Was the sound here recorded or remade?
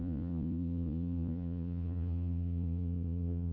remade